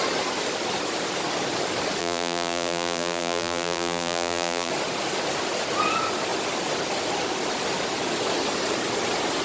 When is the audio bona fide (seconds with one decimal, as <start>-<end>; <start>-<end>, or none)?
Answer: 0.0-2.0; 4.7-9.4